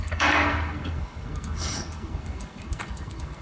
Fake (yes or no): yes